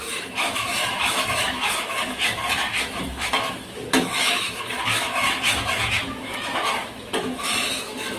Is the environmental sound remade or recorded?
remade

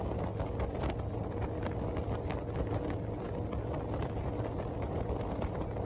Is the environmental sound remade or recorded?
recorded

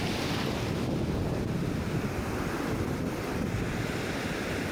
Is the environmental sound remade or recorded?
recorded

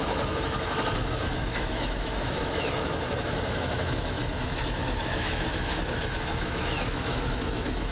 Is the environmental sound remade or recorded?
remade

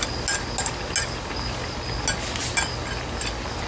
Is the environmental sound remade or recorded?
recorded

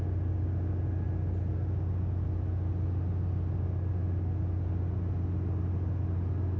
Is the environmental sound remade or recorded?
recorded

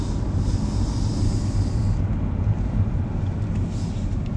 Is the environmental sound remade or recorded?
recorded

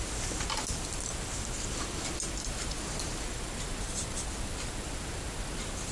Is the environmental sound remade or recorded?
recorded